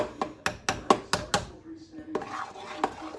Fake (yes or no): no